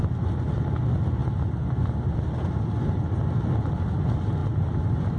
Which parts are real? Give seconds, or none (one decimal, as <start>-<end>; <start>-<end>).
0.0-5.2